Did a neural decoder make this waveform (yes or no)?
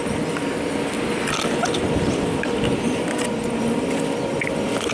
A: no